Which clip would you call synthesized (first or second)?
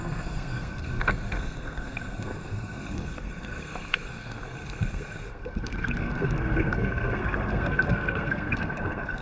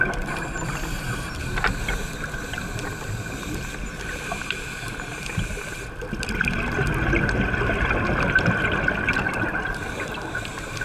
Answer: first